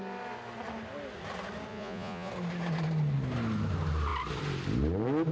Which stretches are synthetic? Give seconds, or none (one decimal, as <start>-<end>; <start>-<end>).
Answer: 1.7-2.3